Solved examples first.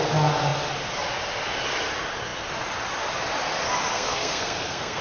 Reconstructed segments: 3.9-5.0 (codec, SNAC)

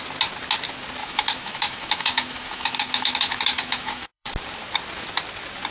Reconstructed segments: 1.0-4.3 (autoencoder, DAC-VAE)

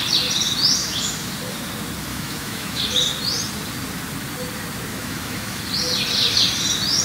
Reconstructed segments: 0.8-1.3 (autoencoder, DAC-VAE); 2.1-2.8; 4.9-5.6

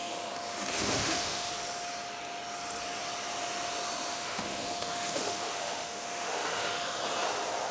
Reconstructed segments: 0.0-1.5 (autoencoder, DAC-VAE); 4.1-7.0